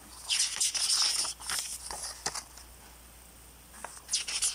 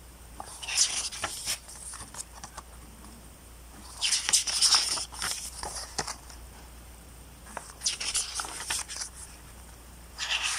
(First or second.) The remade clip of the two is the second